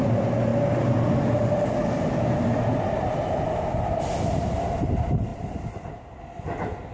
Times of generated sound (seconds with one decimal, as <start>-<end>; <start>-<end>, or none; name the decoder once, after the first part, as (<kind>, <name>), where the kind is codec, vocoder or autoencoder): 5.3-6.2 (vocoder, BigVGAN v2)